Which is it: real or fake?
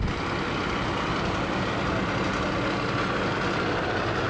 real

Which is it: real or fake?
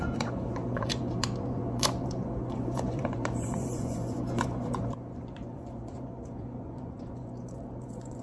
fake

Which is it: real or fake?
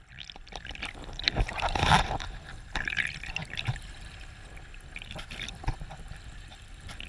fake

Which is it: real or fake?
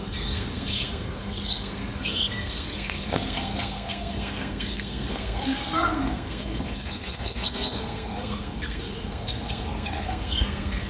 fake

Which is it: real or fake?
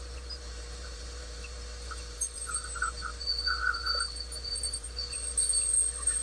fake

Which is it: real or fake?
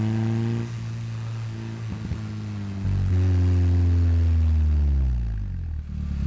real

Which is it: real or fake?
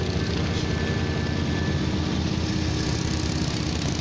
real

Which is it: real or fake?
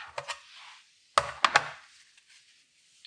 real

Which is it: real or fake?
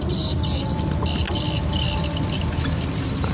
real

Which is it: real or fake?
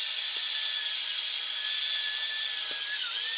real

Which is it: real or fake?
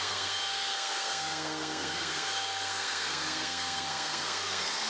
fake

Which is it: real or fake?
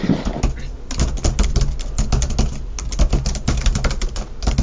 real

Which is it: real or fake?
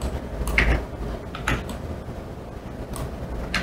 real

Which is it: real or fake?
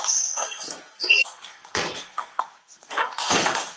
fake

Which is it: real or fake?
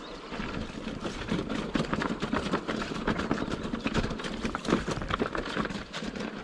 real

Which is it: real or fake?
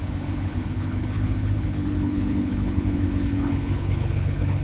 fake